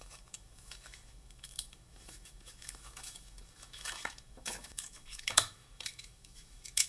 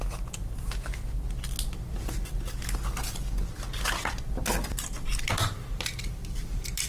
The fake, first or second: first